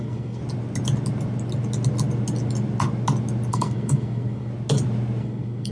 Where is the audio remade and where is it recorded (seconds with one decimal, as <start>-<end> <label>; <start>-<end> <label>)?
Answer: 0.0-0.4 remade; 0.4-3.5 recorded; 3.5-4.5 remade; 4.5-5.2 recorded; 5.2-5.7 remade